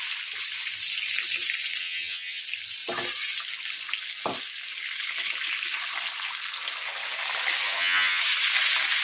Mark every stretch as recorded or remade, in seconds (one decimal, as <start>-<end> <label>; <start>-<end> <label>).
0.0-1.8 recorded; 1.8-2.4 remade; 2.4-7.6 recorded; 7.6-8.2 remade; 8.2-9.0 recorded